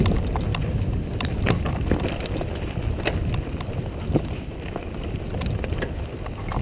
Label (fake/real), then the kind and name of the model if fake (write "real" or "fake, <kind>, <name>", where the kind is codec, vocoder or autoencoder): real